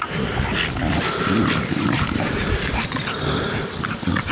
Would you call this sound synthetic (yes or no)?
no